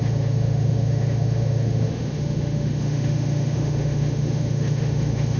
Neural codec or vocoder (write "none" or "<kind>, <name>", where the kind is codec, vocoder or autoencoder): autoencoder, DAC-VAE